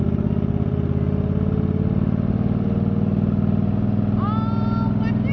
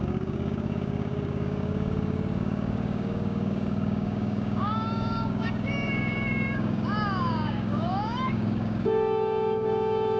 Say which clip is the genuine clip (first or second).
first